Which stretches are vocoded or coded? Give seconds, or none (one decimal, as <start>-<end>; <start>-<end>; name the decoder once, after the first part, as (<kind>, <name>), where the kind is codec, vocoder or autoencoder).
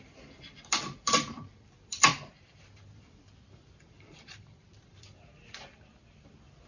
0.0-2.1 (vocoder, BigVGAN v2); 2.6-6.7